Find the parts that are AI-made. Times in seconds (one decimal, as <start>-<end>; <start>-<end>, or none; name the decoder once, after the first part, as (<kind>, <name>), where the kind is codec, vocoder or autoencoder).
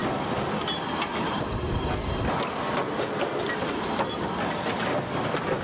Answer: 1.1-1.8 (vocoder, BigVGAN v2)